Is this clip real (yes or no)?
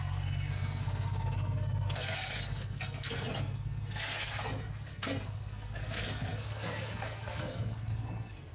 no